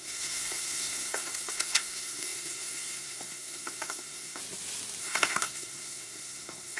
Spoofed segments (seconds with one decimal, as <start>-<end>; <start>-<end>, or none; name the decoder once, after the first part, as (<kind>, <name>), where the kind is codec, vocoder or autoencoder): 0.0-4.4 (codec, SNAC); 5.0-6.8